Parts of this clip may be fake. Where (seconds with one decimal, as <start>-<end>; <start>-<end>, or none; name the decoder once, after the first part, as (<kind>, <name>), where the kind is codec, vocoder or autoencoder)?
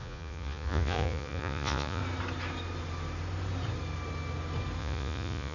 0.0-2.0 (vocoder, Vocos); 4.8-5.5